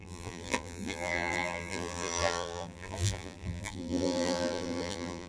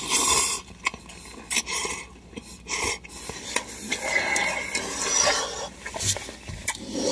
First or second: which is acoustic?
second